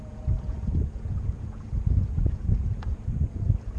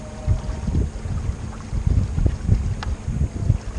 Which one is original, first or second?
second